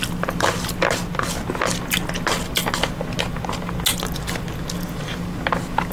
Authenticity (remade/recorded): recorded